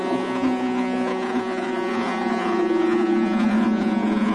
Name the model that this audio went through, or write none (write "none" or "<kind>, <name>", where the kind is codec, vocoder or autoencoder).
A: vocoder, Vocos